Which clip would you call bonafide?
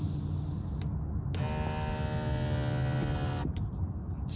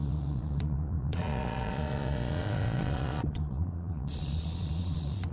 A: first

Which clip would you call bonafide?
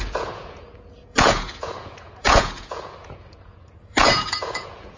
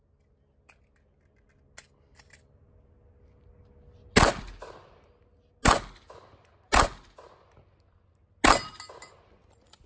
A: second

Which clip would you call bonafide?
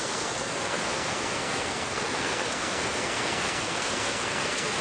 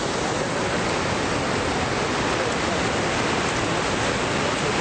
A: second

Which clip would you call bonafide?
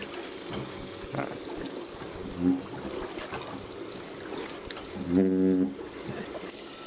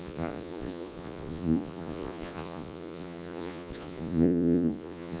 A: first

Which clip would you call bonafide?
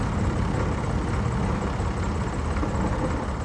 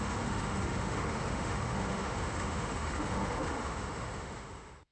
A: first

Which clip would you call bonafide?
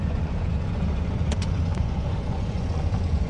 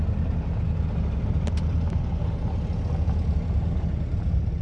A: second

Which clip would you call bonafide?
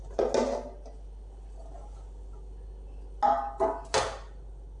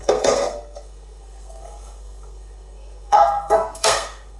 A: first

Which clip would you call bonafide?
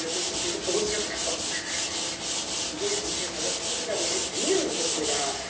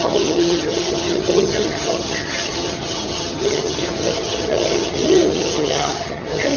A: first